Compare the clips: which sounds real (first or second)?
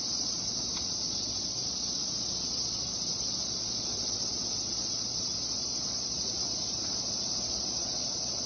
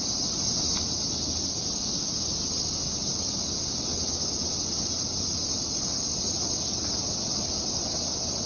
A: second